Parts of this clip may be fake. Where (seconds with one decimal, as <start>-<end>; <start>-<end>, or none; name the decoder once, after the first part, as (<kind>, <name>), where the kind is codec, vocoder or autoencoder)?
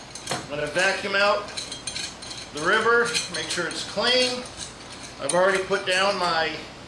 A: 0.6-1.2 (codec, DAC); 4.3-6.1